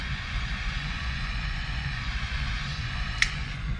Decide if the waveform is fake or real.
fake